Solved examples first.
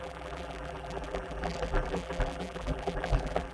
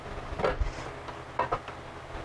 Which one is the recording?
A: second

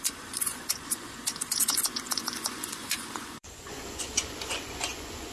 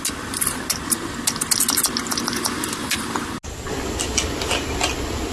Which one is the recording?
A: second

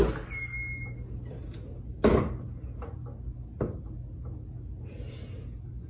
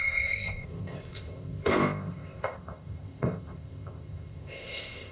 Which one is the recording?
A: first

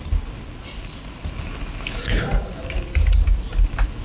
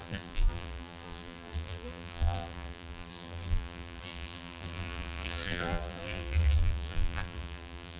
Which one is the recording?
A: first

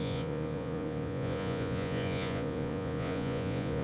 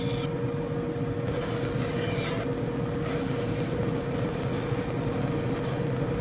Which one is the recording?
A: second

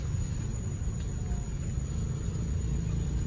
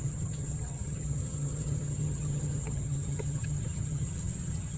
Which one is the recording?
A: first